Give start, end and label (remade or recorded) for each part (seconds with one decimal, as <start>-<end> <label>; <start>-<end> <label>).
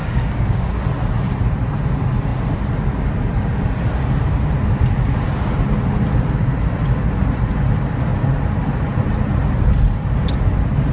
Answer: 0.0-0.8 remade; 0.8-10.9 recorded